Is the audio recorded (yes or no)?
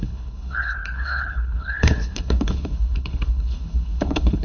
no